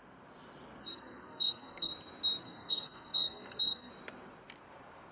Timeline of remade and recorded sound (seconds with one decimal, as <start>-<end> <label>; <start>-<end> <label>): 0.0-0.8 recorded; 0.8-1.9 remade; 1.9-2.4 recorded; 2.4-3.9 remade; 3.9-5.1 recorded